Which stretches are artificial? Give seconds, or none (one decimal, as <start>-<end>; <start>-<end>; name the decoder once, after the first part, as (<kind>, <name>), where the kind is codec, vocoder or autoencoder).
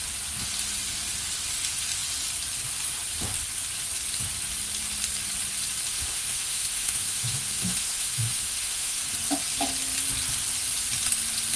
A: 5.9-9.0 (autoencoder, DAC-VAE)